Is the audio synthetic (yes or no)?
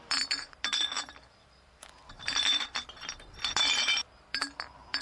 yes